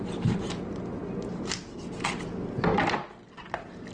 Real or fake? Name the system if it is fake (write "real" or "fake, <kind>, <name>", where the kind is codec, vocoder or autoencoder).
real